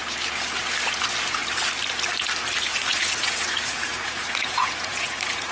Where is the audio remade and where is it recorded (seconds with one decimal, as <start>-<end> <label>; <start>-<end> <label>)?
0.0-2.7 recorded; 2.7-5.5 remade